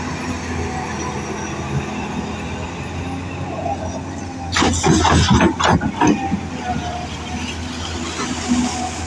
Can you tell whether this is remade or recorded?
recorded